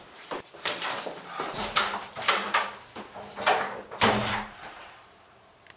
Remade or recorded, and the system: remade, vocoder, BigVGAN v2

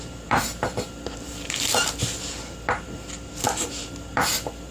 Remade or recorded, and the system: remade, vocoder, BigVGAN v2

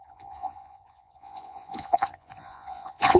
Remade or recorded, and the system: remade, vocoder, Vocos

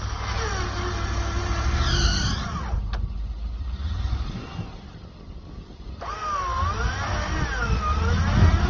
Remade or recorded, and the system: recorded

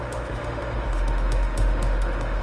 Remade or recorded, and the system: remade, autoencoder, DAC-VAE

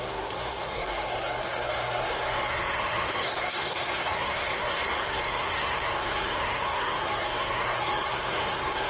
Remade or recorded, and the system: remade, codec, SNAC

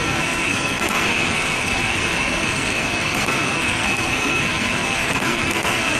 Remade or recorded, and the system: remade, codec, SNAC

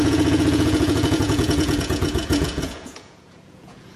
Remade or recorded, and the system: remade, vocoder, Vocos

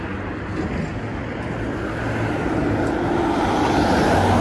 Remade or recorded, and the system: recorded